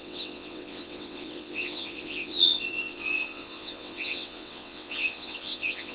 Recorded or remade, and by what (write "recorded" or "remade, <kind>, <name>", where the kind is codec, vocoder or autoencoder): remade, vocoder, WaveNeXt